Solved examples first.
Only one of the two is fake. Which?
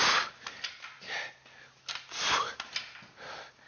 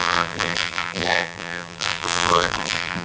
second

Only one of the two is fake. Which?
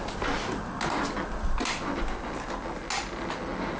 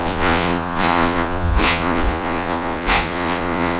second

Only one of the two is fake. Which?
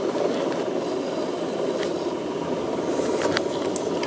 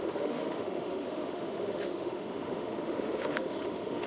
second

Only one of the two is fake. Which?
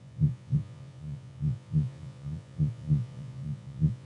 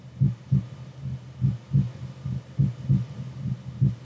first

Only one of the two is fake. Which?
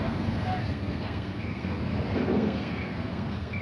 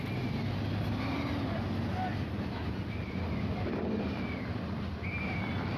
first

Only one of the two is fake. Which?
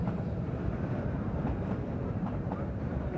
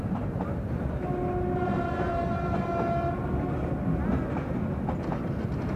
first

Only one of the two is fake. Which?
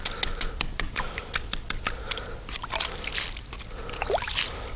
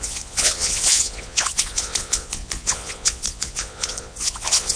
second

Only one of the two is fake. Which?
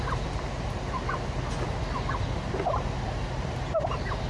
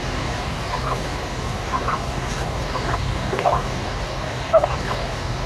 second